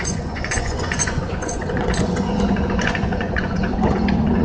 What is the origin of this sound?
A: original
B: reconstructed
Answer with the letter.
B